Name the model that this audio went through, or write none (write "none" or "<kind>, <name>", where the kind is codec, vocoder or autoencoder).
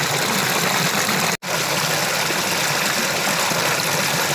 none